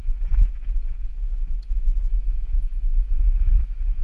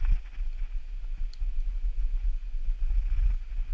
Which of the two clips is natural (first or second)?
second